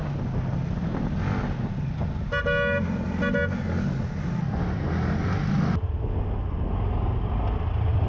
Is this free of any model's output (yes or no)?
yes